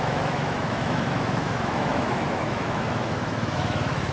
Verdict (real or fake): fake